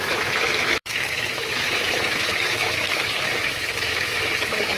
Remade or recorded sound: remade